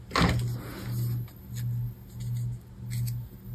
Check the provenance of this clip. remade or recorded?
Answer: recorded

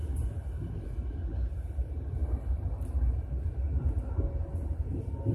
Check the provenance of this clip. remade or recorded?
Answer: recorded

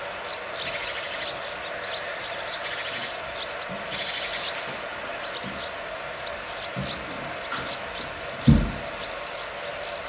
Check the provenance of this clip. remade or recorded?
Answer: recorded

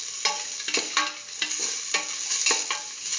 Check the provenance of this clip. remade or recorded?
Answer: recorded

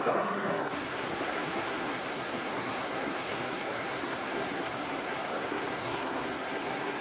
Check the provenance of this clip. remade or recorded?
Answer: remade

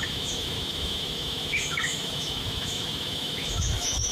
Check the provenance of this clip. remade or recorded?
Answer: remade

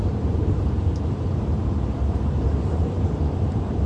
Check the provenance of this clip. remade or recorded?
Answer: remade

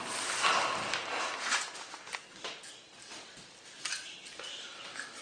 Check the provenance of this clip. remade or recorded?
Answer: recorded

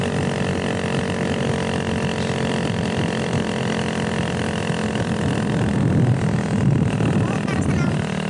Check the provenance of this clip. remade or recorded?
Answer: recorded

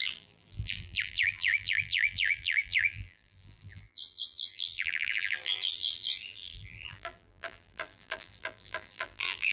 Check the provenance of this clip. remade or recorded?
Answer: remade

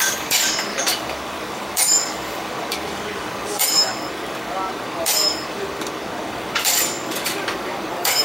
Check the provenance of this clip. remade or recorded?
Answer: remade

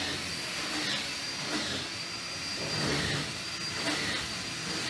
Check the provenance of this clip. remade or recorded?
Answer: recorded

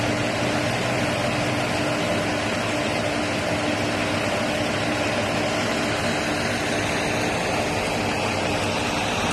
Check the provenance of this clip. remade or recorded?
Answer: recorded